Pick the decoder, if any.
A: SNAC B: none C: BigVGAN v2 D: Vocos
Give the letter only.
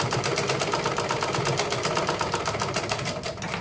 B